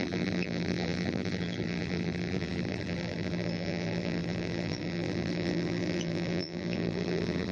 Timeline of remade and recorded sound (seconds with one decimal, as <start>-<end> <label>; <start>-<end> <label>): 0.0-7.5 remade